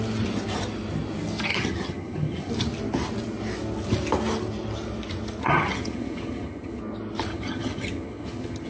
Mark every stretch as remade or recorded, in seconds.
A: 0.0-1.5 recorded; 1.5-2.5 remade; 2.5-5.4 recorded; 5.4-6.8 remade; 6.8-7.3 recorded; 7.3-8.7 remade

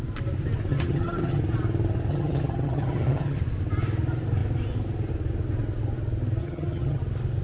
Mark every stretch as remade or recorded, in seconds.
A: 0.0-0.7 recorded; 0.7-1.4 remade; 1.4-2.1 recorded; 2.1-3.4 remade; 3.4-6.4 recorded; 6.4-7.0 remade; 7.0-7.4 recorded

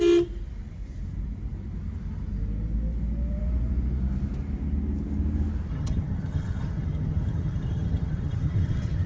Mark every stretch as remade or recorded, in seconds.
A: 0.0-5.7 recorded; 5.7-9.1 remade

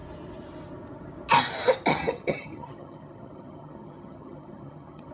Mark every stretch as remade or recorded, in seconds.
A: 0.0-1.9 recorded; 1.9-5.1 remade